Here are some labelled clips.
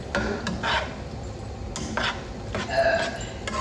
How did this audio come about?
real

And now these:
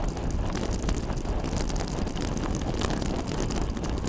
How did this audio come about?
real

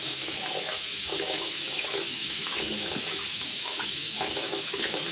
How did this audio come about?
fake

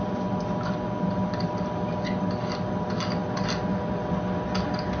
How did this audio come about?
real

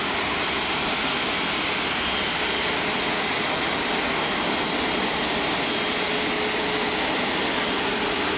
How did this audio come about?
real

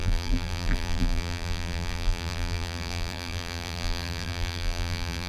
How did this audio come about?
fake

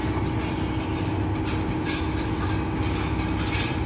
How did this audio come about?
real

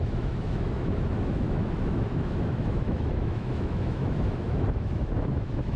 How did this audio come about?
fake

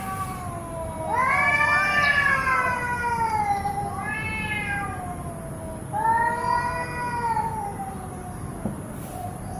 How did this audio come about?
real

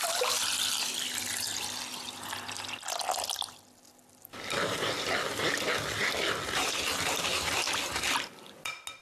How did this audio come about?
real